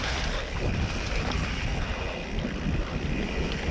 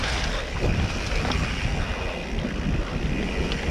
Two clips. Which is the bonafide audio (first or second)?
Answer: second